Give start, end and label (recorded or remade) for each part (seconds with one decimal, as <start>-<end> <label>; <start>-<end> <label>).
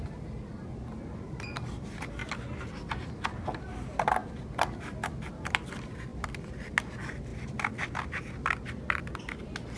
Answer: 0.0-4.2 recorded; 4.2-5.2 remade; 5.2-6.1 recorded; 6.1-6.7 remade; 6.7-9.8 recorded